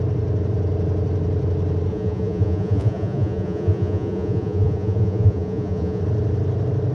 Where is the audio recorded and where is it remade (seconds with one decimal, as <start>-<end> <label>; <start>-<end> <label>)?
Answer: 0.0-1.9 recorded; 1.9-6.0 remade; 6.0-6.9 recorded